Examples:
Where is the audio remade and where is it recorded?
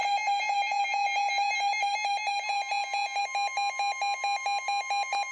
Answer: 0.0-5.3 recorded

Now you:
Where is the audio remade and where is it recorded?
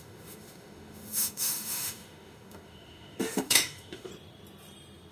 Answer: 0.0-4.1 remade; 4.1-5.1 recorded